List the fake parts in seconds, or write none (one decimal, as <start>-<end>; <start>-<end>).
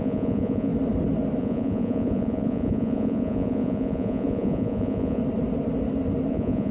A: 0.0-0.7; 1.4-5.2; 6.3-6.7